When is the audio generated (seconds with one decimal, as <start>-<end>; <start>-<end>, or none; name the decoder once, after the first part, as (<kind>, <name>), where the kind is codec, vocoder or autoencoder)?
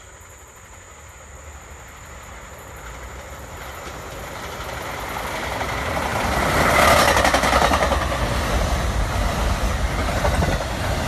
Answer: none